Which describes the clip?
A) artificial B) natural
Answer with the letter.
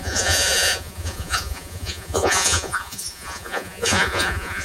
A